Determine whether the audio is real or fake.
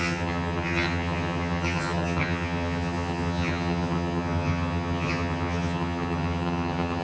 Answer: fake